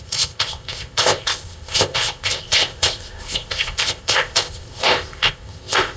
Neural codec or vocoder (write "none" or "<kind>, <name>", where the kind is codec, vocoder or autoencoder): codec, ZipCodec